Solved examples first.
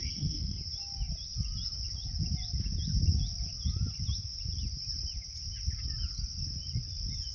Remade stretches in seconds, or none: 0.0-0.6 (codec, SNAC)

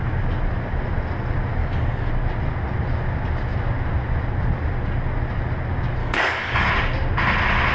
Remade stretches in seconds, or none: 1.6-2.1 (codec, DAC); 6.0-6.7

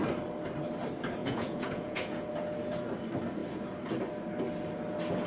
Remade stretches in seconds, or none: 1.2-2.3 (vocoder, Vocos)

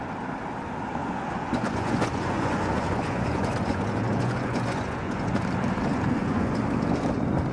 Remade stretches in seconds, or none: 1.0-5.4 (vocoder, Vocos); 5.9-6.6

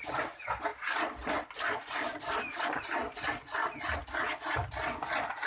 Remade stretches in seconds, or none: 0.7-4.0 (vocoder, BigVGAN v2)

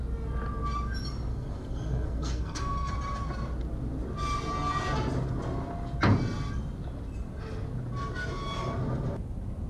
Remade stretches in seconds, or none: 1.3-2.9 (codec, SNAC)

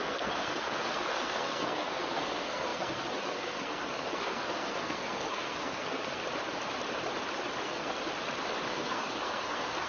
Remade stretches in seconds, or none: 0.0-6.2 (codec, SNAC); 7.6-8.0; 8.7-9.9

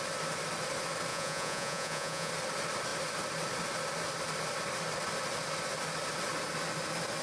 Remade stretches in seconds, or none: 1.1-2.3 (vocoder, Vocos)